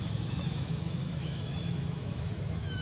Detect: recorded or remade remade